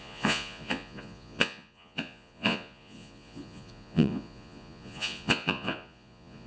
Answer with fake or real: fake